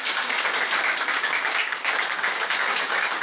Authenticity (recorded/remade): remade